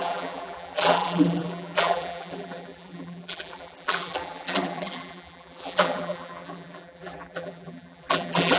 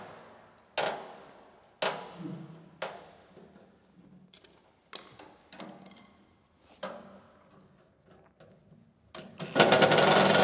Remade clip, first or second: first